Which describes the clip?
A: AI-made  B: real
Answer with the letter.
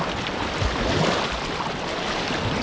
B